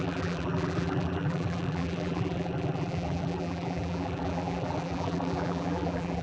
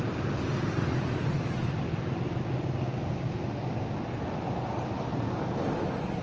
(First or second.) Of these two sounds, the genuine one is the second